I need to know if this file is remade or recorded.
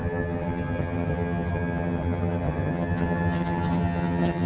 remade